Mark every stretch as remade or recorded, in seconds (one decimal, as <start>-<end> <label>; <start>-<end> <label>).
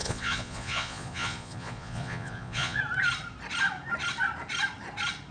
0.0-2.8 remade; 2.8-5.3 recorded